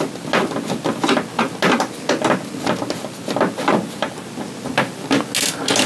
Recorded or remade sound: recorded